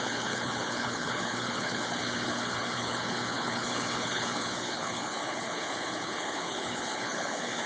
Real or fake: fake